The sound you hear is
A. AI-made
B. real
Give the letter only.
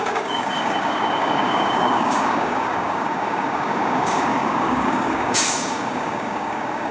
A